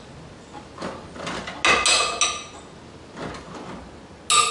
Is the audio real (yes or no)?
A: yes